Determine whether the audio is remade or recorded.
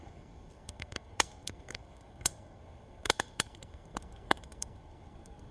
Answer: remade